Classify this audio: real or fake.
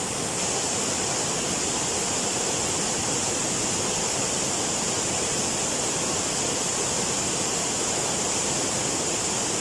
real